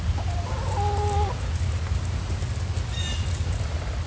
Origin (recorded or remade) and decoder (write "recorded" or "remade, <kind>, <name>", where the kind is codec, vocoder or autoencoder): recorded